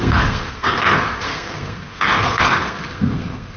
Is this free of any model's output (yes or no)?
no